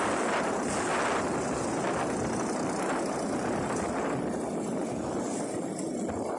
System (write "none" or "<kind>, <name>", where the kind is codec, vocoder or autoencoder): none